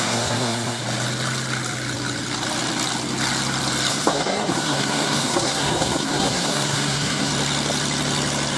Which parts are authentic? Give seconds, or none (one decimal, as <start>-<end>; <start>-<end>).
0.8-3.9; 7.3-8.6